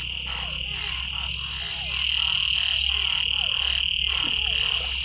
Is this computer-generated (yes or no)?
no